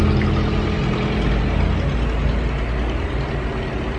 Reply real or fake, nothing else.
real